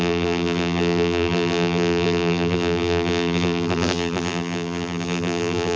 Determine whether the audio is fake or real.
fake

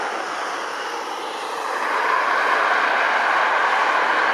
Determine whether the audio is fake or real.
real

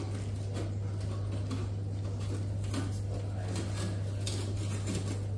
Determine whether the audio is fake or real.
real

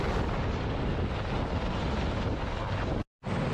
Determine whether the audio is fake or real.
real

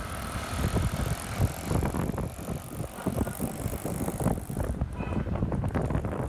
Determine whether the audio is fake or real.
fake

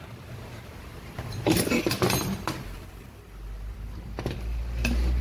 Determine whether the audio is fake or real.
fake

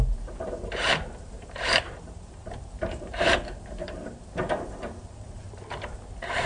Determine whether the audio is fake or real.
fake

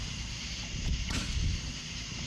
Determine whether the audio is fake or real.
fake